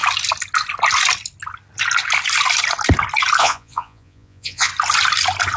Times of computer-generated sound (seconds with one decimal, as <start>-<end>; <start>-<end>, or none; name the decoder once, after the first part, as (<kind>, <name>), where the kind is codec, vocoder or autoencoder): 3.4-4.7 (vocoder, Vocos)